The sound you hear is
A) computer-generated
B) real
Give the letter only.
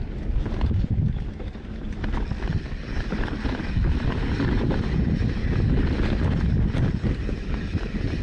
A